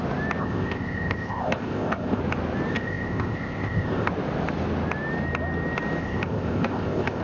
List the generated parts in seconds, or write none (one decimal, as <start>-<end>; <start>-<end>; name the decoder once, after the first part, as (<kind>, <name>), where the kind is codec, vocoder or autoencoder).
0.4-2.2 (codec, ZipCodec); 2.7-4.1; 6.0-7.2